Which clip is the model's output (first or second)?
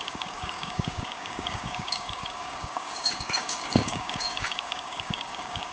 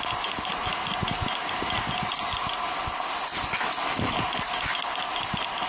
first